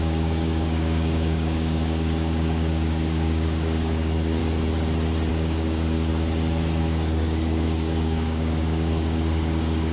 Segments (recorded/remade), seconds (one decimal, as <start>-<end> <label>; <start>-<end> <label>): 0.0-4.4 remade; 4.4-5.3 recorded; 5.3-6.1 remade; 6.1-6.8 recorded; 6.8-9.9 remade